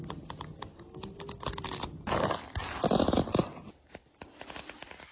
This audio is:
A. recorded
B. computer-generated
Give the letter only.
A